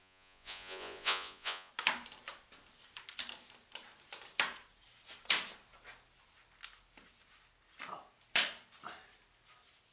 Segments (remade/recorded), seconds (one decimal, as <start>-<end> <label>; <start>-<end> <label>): 0.0-1.7 remade; 1.7-9.9 recorded